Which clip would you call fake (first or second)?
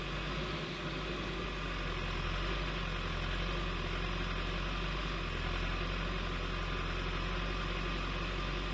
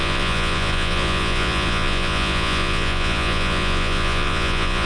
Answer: second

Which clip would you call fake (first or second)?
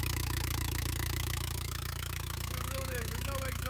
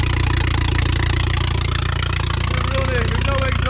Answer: first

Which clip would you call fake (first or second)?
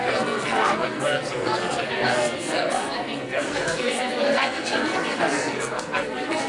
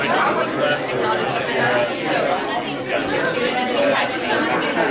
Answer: first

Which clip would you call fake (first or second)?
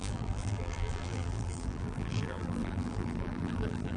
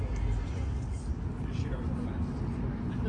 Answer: first